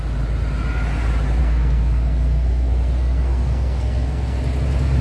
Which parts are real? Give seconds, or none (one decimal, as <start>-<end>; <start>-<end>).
0.0-1.4; 4.4-5.0

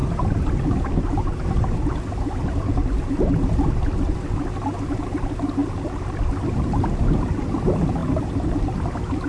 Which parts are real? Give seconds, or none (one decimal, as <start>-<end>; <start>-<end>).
0.0-9.3